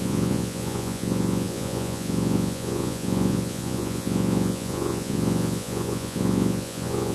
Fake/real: fake